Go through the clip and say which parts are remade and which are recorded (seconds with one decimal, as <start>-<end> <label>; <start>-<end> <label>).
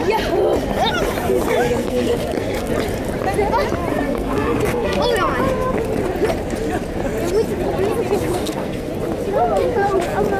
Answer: 0.0-1.8 recorded; 1.8-2.7 remade; 2.7-3.9 recorded; 3.9-5.0 remade; 5.0-8.2 recorded; 8.2-8.9 remade; 8.9-10.4 recorded